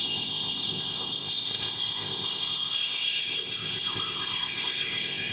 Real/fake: fake